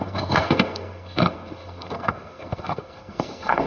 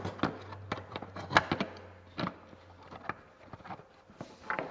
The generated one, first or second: first